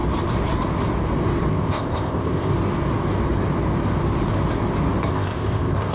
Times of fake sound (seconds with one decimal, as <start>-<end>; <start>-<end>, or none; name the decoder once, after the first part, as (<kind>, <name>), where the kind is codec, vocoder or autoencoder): 1.5-2.5 (codec, ZipCodec); 5.1-5.9